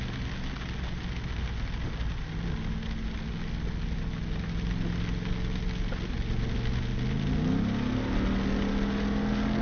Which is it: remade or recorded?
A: recorded